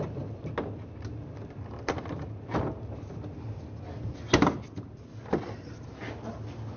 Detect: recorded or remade recorded